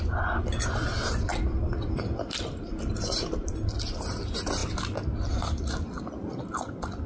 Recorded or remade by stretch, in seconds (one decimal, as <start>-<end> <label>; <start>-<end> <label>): 0.0-1.7 recorded; 1.7-3.5 remade; 3.5-7.1 recorded